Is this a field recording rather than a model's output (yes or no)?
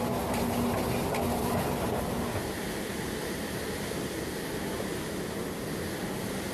yes